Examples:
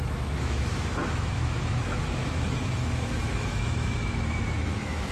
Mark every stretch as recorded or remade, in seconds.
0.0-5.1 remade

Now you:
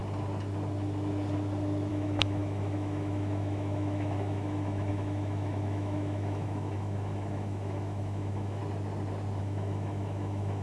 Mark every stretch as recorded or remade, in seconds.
0.0-1.9 recorded; 1.9-8.6 remade; 8.6-9.4 recorded; 9.4-10.6 remade

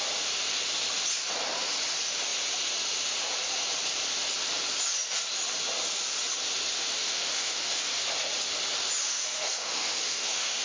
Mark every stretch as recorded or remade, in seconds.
0.0-6.8 recorded; 6.8-7.8 remade; 7.8-9.0 recorded; 9.0-10.6 remade

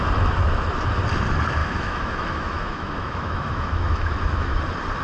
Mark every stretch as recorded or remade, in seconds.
0.0-1.6 recorded; 1.6-4.6 remade; 4.6-5.0 recorded

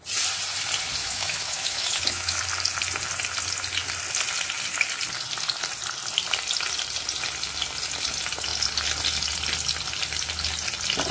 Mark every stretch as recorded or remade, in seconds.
0.0-1.0 recorded; 1.0-2.4 remade; 2.4-11.1 recorded

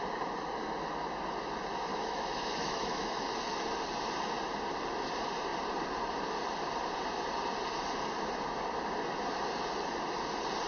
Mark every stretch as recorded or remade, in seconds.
0.0-1.9 recorded; 1.9-3.3 remade; 3.3-10.7 recorded